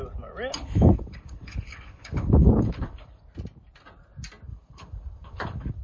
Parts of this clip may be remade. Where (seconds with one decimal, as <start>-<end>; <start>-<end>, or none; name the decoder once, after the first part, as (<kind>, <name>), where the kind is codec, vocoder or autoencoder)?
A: 0.6-3.2 (codec, HILCodec); 4.5-5.8